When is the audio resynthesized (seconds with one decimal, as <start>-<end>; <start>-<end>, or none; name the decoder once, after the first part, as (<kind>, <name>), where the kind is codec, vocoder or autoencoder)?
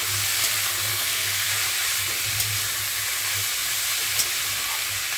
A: 0.9-1.5 (codec, SNAC)